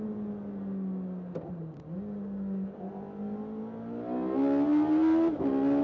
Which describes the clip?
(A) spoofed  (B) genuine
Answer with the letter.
B